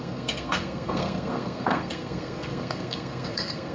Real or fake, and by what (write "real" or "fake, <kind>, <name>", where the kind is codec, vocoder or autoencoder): fake, codec, SNAC